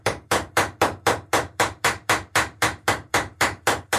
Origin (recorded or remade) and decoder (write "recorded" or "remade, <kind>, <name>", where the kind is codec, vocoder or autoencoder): remade, vocoder, BigVGAN v2